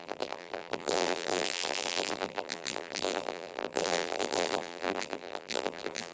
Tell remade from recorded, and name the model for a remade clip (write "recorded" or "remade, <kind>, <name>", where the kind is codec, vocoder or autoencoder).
remade, vocoder, BigVGAN v2